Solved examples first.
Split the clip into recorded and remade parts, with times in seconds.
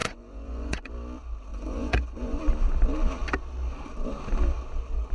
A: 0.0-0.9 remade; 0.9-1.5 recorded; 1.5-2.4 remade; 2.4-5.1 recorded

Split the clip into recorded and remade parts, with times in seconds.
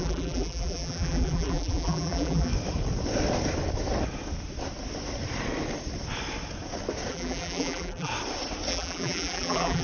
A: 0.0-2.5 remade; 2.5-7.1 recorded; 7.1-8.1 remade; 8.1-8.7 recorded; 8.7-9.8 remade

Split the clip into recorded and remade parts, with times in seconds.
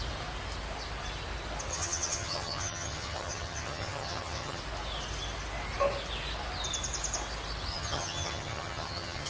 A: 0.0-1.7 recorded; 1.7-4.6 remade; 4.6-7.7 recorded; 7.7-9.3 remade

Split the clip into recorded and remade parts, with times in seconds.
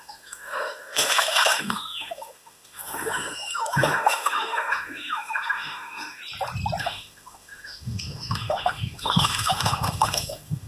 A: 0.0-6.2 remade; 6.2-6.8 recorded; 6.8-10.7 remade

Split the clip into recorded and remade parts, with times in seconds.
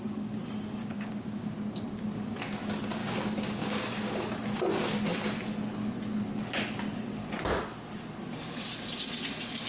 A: 0.0-0.8 recorded; 0.8-1.8 remade; 1.8-3.0 recorded; 3.0-4.3 remade; 4.3-9.7 recorded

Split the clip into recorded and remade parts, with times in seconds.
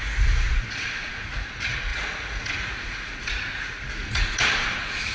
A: 0.0-5.1 remade